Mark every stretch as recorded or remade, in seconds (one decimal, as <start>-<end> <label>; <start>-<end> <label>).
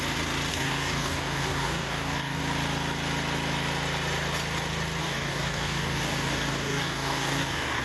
0.0-0.5 recorded; 0.5-2.4 remade; 2.4-5.0 recorded; 5.0-7.8 remade